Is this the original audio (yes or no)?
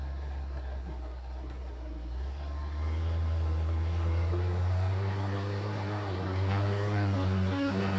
no